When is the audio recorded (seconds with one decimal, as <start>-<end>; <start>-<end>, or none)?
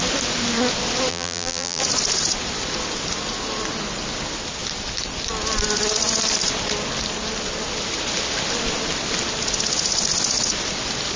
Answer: 0.0-1.1; 1.8-11.2